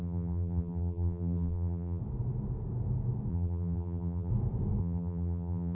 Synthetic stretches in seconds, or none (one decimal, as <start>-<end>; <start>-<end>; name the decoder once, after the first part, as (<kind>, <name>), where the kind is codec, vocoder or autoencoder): 0.0-2.0 (vocoder, BigVGAN v2); 3.3-4.3; 4.8-5.7